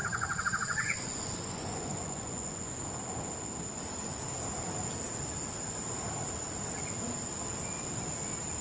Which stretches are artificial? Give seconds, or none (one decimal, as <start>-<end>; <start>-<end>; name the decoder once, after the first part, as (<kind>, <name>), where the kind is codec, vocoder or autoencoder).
0.0-2.8 (vocoder, Vocos)